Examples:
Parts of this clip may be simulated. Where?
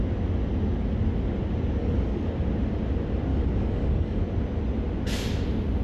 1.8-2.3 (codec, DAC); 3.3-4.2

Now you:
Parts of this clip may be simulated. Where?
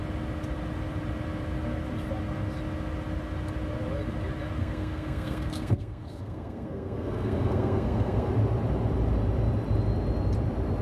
4.6-8.3 (codec, SNAC)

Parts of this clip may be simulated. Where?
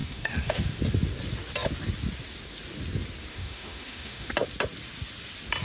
0.0-0.8 (autoencoder, DAC-VAE); 3.3-4.3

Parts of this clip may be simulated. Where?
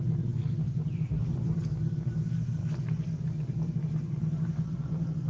none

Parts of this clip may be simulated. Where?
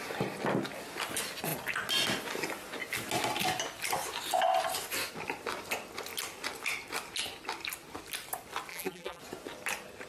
8.7-9.2 (vocoder, BigVGAN v2)